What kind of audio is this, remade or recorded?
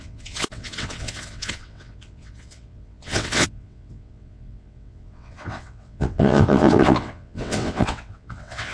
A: remade